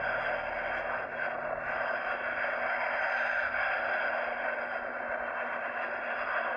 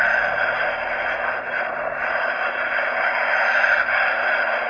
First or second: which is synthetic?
second